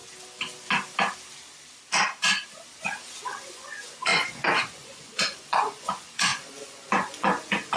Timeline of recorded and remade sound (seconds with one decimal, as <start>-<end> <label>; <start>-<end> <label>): 0.0-3.5 recorded; 3.5-7.8 remade

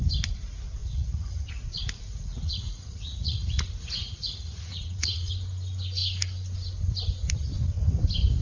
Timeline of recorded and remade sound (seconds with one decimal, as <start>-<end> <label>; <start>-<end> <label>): 0.0-0.8 recorded; 0.8-1.5 remade; 1.5-2.1 recorded; 2.1-5.3 remade; 5.3-8.4 recorded

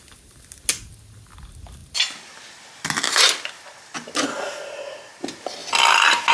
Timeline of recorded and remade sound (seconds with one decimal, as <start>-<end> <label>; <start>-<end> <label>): 0.0-6.3 recorded

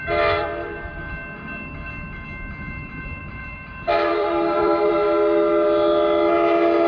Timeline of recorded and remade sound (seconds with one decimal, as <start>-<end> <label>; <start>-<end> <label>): 0.0-0.4 recorded; 0.4-1.0 remade; 1.0-3.2 recorded; 3.2-4.9 remade; 4.9-6.9 recorded

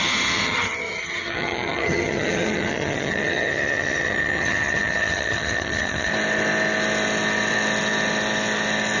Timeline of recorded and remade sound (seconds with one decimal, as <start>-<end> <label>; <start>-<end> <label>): 0.0-6.1 remade; 6.1-9.0 recorded

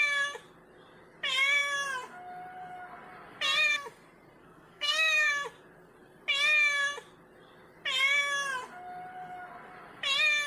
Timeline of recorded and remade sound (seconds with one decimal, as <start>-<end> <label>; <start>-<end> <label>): 0.0-4.4 recorded; 4.4-5.3 remade; 5.3-10.5 recorded

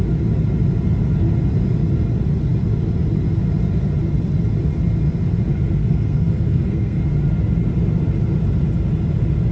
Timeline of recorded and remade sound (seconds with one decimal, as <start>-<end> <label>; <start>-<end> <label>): 0.0-5.8 recorded; 5.8-7.0 remade; 7.0-9.5 recorded